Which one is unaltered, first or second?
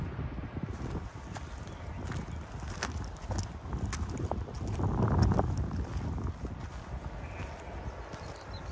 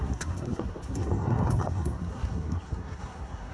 first